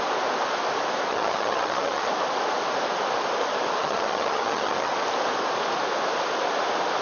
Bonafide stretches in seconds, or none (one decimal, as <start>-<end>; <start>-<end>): 0.0-1.1; 2.1-3.8; 4.9-7.0